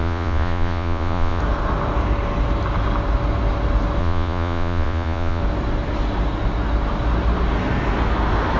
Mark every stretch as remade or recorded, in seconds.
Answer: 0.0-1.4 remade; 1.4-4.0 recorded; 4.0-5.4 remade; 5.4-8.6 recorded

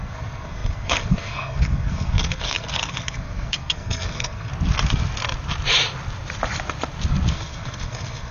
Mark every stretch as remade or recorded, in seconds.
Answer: 0.0-4.5 remade; 4.5-7.3 recorded; 7.3-8.3 remade

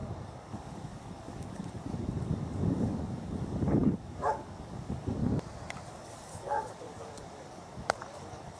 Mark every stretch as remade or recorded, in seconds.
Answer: 0.0-5.2 remade; 5.2-5.9 recorded; 5.9-8.6 remade

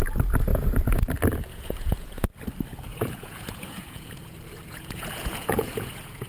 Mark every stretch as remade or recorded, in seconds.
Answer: 0.0-0.5 recorded; 0.5-1.0 remade; 1.0-1.5 recorded; 1.5-2.3 remade; 2.3-2.9 recorded; 2.9-6.3 remade

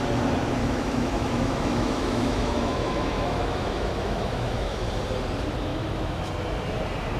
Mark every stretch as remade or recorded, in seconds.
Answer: 0.0-0.6 recorded; 0.6-4.9 remade; 4.9-5.7 recorded; 5.7-6.3 remade; 6.3-7.2 recorded

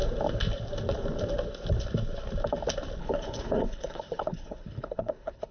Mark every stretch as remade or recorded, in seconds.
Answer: 0.0-3.0 recorded; 3.0-5.5 remade